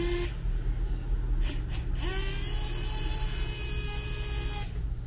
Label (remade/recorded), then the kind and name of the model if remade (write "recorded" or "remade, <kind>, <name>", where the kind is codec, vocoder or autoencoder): recorded